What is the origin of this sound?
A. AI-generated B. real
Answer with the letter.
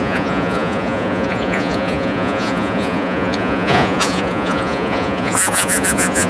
A